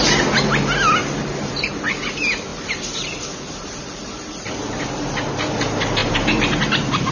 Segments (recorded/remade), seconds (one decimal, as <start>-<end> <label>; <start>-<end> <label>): 0.0-1.0 recorded; 1.0-1.8 remade; 1.8-2.5 recorded; 2.5-4.8 remade; 4.8-6.0 recorded; 6.0-7.1 remade